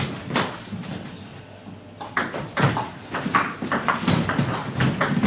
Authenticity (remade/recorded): recorded